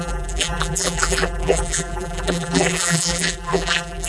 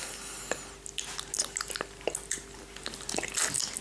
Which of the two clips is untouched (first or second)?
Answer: second